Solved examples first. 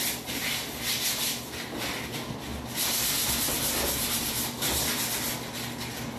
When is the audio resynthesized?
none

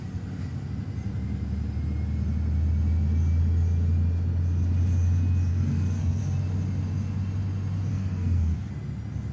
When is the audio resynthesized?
5.5-6.2 (codec, SNAC); 7.9-8.7

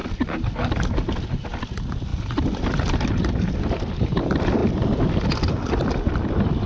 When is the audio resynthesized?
none

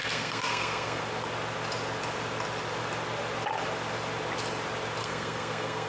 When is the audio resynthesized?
0.0-1.0 (codec, SNAC); 5.0-5.9